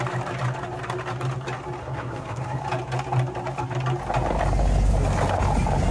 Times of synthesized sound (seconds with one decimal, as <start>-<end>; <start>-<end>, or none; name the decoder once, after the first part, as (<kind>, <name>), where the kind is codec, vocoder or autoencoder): 1.8-2.6 (codec, SNAC)